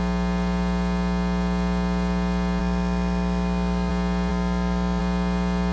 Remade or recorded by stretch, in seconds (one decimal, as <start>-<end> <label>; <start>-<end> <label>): 0.0-2.6 recorded; 2.6-3.9 remade; 3.9-4.3 recorded; 4.3-5.0 remade; 5.0-5.7 recorded